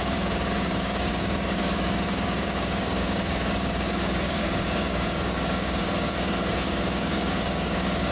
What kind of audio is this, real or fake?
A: fake